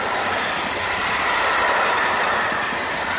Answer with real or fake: real